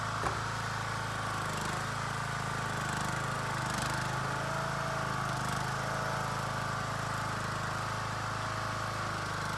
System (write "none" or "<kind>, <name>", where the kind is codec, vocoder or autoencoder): none